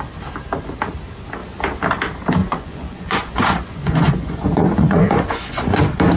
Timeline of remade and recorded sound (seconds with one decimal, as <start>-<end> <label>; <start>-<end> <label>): 0.0-2.4 recorded; 2.4-5.8 remade; 5.8-6.2 recorded